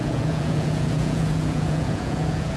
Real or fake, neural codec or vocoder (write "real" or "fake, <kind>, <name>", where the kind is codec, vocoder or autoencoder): fake, vocoder, Vocos